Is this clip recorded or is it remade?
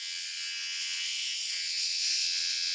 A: remade